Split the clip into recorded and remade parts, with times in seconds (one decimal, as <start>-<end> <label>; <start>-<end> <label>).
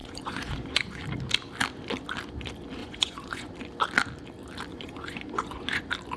0.0-1.0 remade; 1.0-2.8 recorded; 2.8-3.5 remade; 3.5-4.7 recorded; 4.7-5.8 remade; 5.8-6.2 recorded